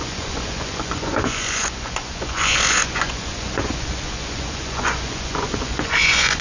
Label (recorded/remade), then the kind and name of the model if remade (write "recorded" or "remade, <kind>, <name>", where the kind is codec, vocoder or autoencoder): remade, vocoder, Vocos